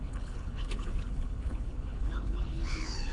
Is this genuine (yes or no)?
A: no